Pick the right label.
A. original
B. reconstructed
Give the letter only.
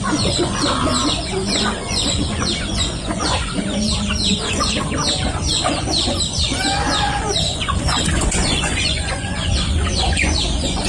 B